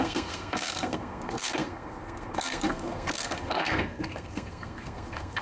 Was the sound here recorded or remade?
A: remade